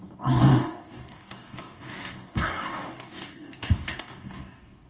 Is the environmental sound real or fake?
fake